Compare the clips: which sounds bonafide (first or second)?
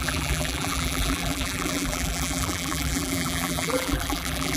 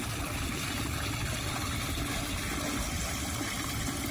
second